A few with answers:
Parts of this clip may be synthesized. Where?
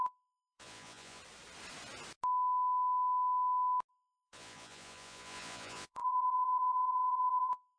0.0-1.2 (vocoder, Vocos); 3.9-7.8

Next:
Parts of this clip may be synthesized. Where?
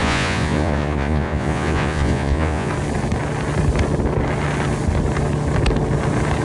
0.0-2.7 (vocoder, Vocos)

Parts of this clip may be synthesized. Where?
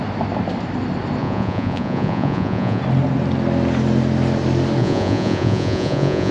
1.2-2.8 (vocoder, Vocos); 4.8-6.3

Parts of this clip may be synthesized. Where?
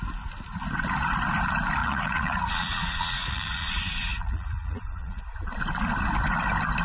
1.8-5.2 (vocoder, Vocos)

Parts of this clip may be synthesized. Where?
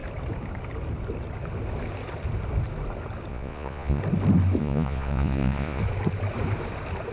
3.3-4.0 (vocoder, Vocos); 4.6-5.8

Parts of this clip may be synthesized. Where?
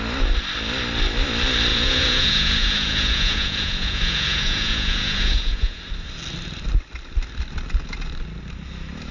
1.7-5.8 (vocoder, Vocos)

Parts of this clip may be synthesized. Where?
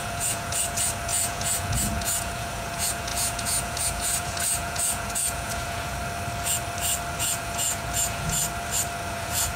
0.0-6.0 (vocoder, Vocos); 7.2-8.4; 9.1-9.6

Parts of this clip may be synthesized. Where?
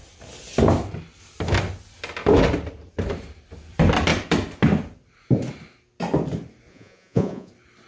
6.7-7.5 (vocoder, Vocos)